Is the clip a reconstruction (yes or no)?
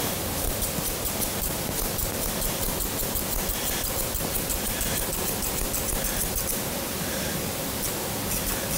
no